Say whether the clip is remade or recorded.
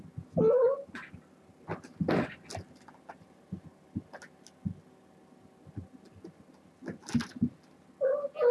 recorded